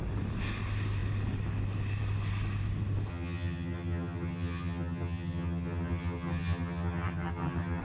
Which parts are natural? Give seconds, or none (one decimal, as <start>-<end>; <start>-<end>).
0.0-3.1